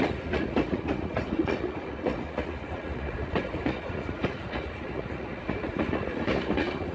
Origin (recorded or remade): remade